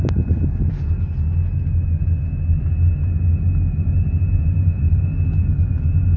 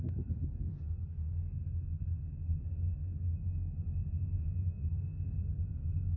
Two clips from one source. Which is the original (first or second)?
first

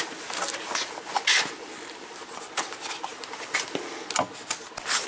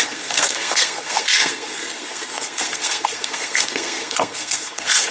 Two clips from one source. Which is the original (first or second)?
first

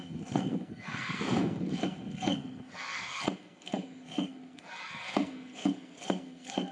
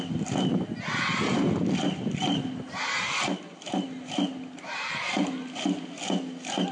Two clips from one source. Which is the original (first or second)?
second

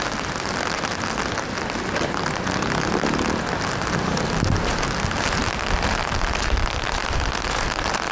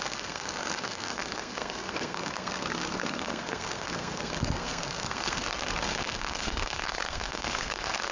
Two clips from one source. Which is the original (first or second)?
first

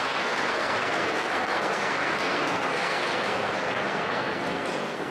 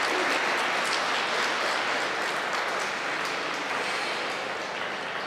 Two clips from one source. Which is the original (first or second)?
second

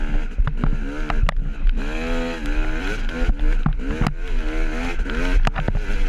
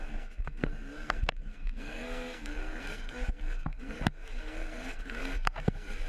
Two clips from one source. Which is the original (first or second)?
first